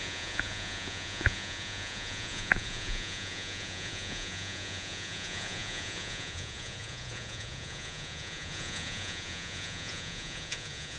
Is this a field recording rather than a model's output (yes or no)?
no